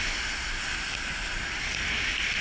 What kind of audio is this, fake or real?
real